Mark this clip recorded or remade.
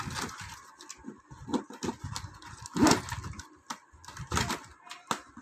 recorded